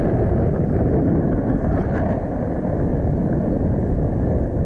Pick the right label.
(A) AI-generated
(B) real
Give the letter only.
B